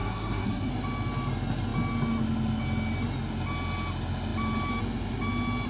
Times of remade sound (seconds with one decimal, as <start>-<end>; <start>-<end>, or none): 0.0-0.7